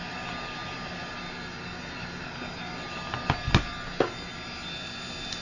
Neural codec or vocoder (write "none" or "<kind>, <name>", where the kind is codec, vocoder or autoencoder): none